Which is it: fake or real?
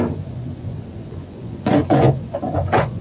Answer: fake